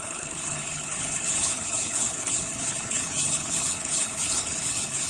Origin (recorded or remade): remade